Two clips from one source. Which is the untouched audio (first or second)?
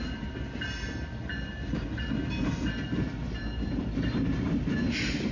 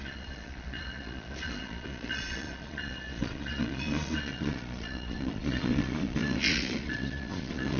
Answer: first